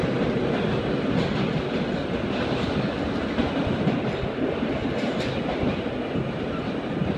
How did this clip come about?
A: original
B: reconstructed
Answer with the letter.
A